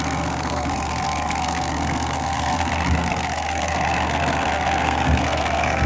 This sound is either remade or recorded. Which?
remade